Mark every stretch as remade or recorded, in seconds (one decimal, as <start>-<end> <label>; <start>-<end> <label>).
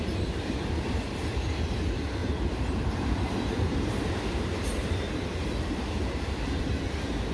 0.0-2.2 recorded; 2.2-6.6 remade; 6.6-7.3 recorded